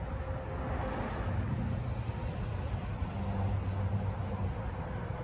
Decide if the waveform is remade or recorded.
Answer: recorded